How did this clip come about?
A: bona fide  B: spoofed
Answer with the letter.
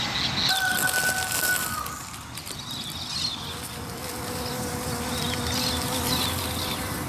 A